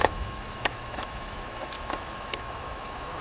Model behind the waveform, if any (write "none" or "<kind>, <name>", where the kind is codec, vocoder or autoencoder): autoencoder, DAC-VAE